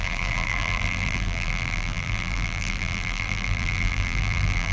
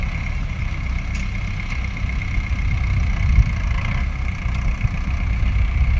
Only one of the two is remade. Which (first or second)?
first